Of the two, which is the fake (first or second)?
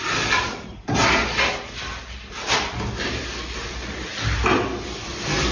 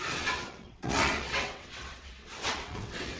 second